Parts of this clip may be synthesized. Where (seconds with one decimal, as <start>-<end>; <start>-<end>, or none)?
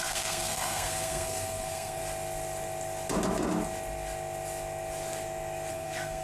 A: 0.0-2.0; 5.7-6.2